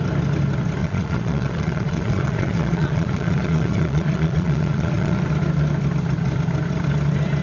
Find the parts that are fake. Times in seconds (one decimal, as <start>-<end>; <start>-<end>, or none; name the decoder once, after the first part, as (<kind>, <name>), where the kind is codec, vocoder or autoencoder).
0.8-5.2 (vocoder, Vocos)